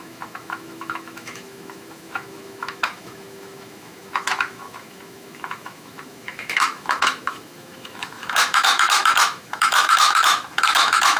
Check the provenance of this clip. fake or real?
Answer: fake